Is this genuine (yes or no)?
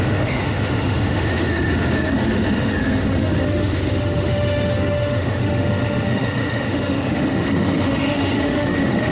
no